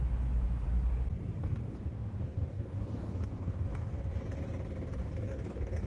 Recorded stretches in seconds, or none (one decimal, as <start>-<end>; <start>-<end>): 0.0-1.4; 4.2-5.0